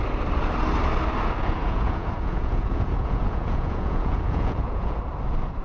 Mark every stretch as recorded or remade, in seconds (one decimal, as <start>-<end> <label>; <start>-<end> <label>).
0.0-1.6 recorded; 1.6-5.0 remade; 5.0-5.6 recorded